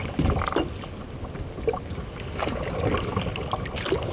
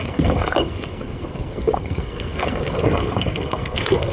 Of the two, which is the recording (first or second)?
first